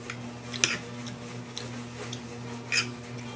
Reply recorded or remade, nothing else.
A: recorded